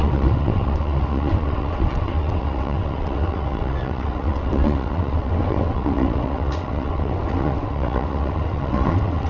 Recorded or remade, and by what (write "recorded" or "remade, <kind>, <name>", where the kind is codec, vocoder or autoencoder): remade, vocoder, WaveNeXt